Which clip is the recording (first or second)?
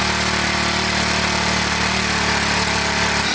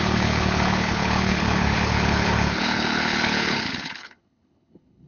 first